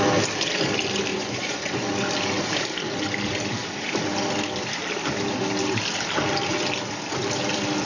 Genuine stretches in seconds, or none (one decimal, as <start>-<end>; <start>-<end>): 0.0-1.1; 1.9-7.8

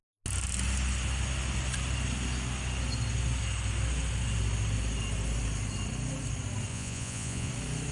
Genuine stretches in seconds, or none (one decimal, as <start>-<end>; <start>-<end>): 0.0-6.7; 7.5-7.9